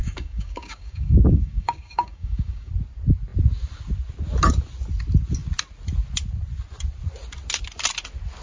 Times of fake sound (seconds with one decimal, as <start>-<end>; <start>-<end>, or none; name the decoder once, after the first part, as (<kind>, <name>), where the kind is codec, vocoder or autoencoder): 0.0-2.7 (codec, DAC)